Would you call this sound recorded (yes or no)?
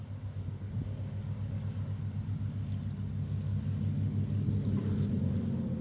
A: yes